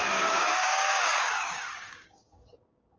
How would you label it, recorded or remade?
remade